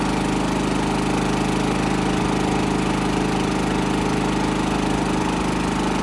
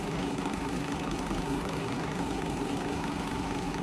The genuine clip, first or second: first